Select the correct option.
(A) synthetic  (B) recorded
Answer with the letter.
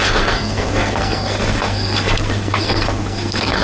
A